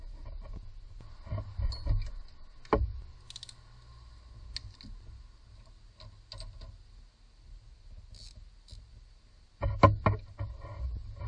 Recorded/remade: recorded